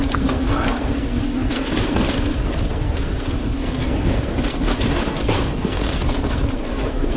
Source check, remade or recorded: remade